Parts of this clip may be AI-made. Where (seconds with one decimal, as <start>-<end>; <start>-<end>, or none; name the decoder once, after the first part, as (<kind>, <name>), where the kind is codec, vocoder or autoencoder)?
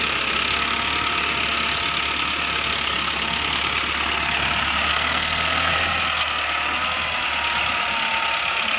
4.9-5.7 (codec, SNAC)